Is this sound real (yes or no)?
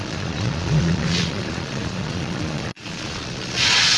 no